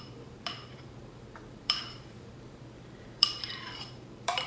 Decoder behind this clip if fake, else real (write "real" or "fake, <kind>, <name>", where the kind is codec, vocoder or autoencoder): fake, vocoder, BigVGAN v2